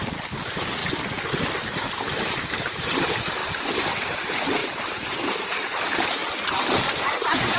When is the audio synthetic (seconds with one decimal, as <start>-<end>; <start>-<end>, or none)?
0.0-0.8; 2.2-3.4; 4.0-6.2; 7.0-7.6